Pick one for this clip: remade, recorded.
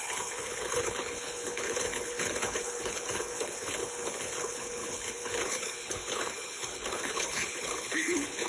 remade